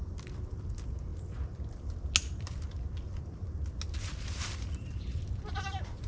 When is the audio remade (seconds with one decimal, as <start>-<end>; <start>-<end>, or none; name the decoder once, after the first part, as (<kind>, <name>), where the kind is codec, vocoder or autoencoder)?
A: none